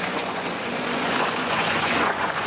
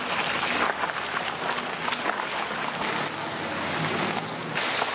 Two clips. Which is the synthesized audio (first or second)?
first